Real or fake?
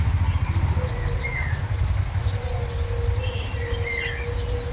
real